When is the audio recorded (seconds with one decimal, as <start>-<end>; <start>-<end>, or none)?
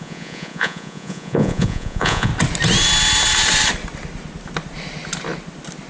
2.3-5.9